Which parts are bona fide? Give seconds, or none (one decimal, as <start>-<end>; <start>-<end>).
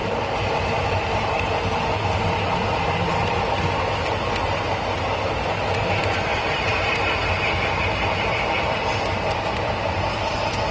1.8-6.3; 9.9-10.7